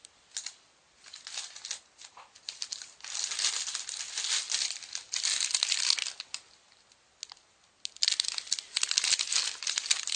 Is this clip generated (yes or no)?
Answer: no